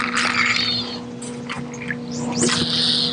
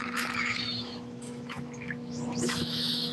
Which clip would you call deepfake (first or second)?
second